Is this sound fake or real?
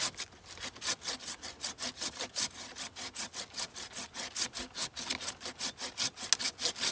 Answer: real